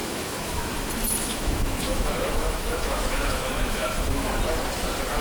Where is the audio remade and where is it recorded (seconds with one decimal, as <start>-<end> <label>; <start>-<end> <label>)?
0.0-0.7 remade; 0.7-1.2 recorded; 1.2-4.3 remade; 4.3-5.2 recorded